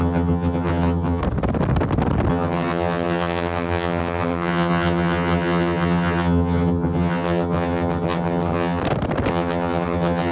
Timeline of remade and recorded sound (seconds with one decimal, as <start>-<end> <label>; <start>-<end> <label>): 0.0-1.2 remade; 1.2-2.3 recorded; 2.3-8.8 remade; 8.8-9.3 recorded; 9.3-10.3 remade